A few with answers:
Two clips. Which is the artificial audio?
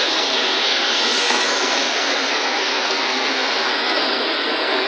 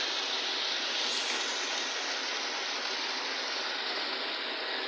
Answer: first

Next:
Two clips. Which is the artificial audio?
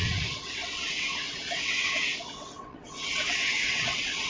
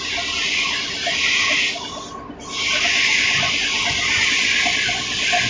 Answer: first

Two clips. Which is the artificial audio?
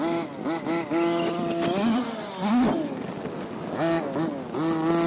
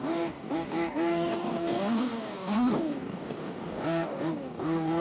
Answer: second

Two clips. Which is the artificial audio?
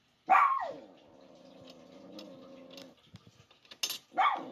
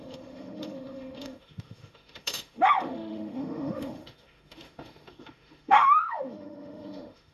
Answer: second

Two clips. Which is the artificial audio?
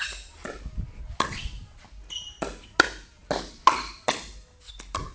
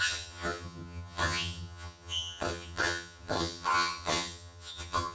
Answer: second